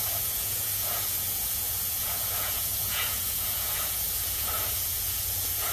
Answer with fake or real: fake